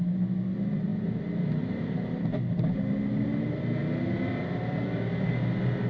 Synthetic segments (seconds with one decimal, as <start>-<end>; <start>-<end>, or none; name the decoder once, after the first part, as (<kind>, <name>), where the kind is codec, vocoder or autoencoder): none